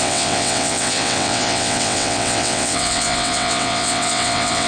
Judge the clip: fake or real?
fake